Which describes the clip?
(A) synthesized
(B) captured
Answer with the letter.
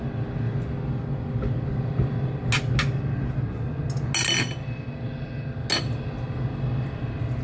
B